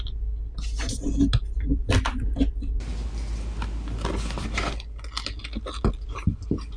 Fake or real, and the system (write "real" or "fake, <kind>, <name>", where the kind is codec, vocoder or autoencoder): real